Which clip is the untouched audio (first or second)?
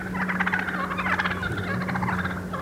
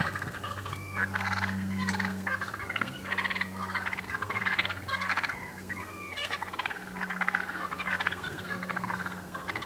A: first